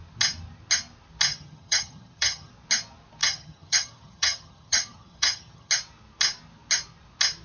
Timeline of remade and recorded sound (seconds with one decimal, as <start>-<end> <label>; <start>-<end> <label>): 0.0-1.3 recorded; 1.3-2.5 remade; 2.5-3.2 recorded; 3.2-5.7 remade; 5.7-7.4 recorded